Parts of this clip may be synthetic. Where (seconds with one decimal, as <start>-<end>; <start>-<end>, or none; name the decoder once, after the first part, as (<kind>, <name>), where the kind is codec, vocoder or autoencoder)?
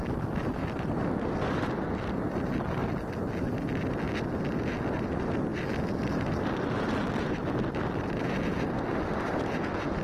0.6-1.9 (vocoder, BigVGAN v2)